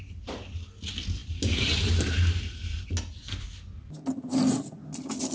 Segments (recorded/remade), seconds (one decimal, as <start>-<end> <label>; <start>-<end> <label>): 0.0-1.2 recorded; 1.2-2.6 remade; 2.6-5.3 recorded